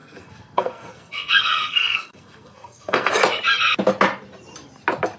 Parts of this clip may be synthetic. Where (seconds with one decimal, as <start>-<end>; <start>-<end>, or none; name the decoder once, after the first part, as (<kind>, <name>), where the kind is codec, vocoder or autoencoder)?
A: 0.0-3.1 (codec, SNAC)